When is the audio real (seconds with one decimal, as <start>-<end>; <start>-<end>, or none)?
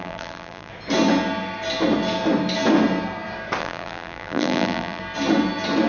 0.7-3.6; 5.0-5.9